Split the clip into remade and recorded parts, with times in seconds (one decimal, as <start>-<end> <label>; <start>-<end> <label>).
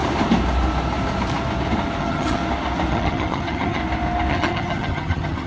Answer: 0.0-2.0 recorded; 2.0-2.4 remade; 2.4-2.9 recorded; 2.9-3.8 remade; 3.8-4.3 recorded; 4.3-5.5 remade